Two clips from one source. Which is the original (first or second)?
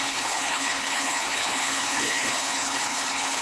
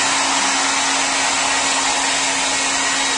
second